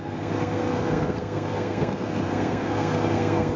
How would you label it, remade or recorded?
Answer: remade